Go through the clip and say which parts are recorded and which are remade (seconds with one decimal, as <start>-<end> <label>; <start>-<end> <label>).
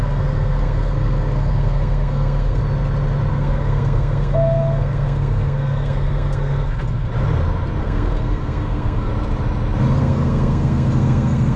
0.0-2.6 remade; 2.6-3.3 recorded; 3.3-7.1 remade; 7.1-7.8 recorded; 7.8-9.1 remade; 9.1-10.0 recorded; 10.0-11.6 remade